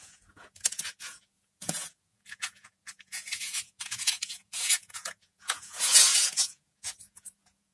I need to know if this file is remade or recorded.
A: remade